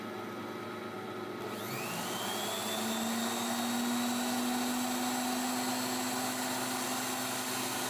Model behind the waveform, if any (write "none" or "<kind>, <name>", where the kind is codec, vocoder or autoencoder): none